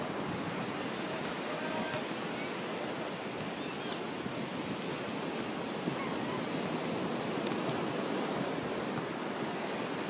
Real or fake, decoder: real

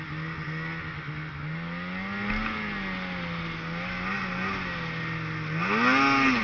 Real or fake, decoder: real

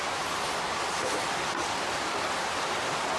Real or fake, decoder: real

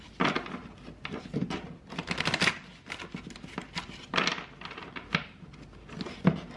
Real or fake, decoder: real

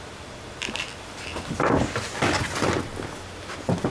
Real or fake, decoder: real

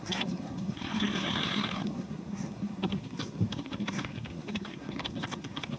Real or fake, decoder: fake, codec, SNAC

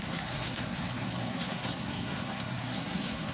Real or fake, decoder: fake, codec, SNAC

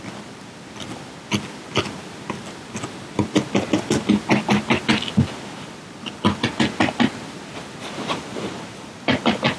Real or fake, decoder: real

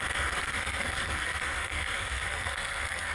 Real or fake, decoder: fake, codec, SNAC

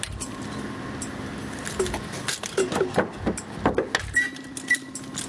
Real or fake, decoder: real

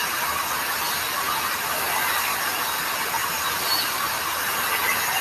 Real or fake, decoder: real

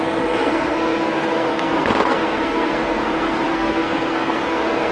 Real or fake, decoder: fake, codec, SNAC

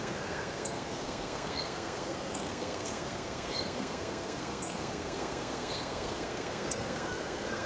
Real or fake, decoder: fake, codec, SNAC